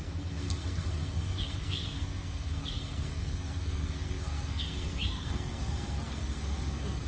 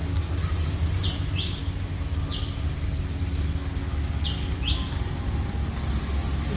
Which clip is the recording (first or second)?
second